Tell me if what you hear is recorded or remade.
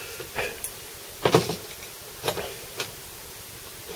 recorded